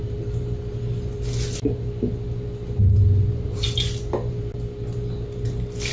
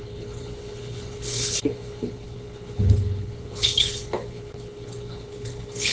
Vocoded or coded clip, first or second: second